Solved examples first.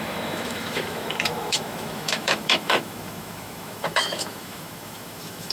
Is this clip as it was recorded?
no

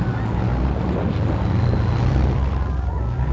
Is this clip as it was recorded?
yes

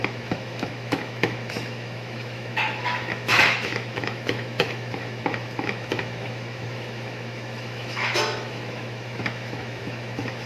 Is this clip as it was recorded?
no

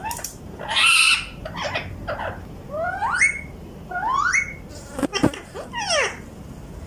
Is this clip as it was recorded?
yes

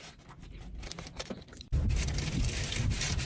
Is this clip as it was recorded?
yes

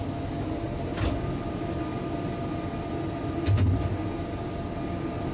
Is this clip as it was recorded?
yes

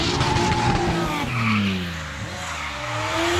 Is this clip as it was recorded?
yes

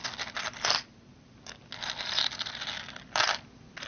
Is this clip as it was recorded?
yes